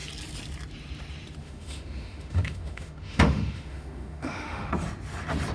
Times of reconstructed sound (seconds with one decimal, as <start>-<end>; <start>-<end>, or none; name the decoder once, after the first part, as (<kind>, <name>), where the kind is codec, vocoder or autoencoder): 1.4-4.7 (autoencoder, DAC-VAE)